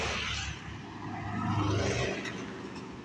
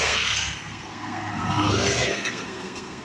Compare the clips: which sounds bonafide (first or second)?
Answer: first